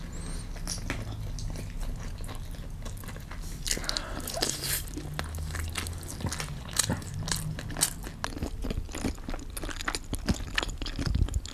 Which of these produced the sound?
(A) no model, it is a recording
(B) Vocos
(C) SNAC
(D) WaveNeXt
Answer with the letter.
A